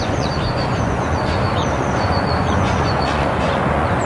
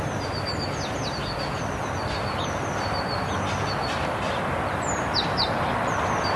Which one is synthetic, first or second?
first